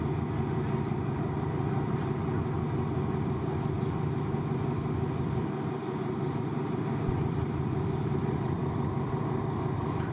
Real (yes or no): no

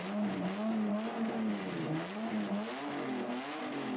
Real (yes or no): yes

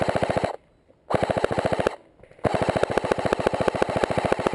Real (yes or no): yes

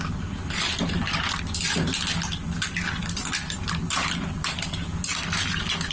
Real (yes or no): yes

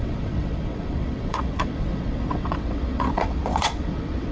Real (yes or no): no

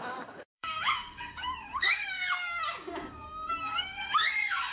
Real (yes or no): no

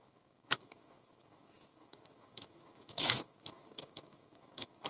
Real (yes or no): no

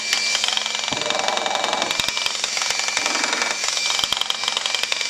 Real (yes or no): yes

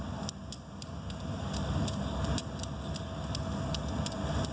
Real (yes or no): yes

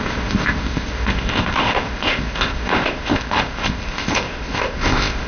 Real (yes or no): no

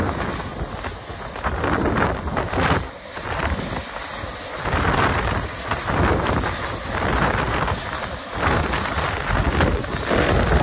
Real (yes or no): yes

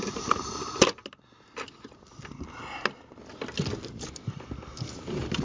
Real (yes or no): yes